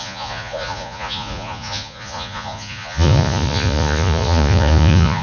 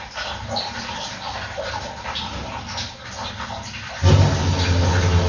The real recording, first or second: second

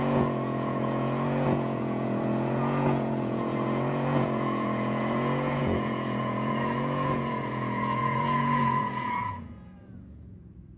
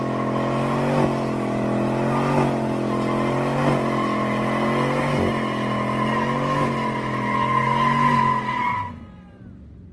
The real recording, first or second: second